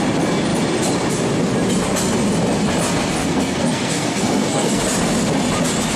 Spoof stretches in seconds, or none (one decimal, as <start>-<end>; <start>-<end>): 3.2-4.8